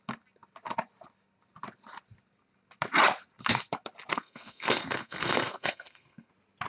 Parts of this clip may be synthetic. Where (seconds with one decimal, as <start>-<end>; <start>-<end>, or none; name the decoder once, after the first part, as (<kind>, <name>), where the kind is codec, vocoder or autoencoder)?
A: 4.1-6.3 (codec, SNAC)